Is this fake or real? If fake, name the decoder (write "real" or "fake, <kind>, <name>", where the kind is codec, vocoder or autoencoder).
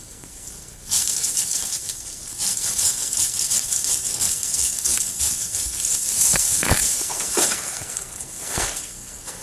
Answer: fake, codec, SNAC